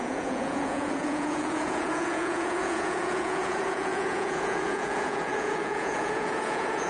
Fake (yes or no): yes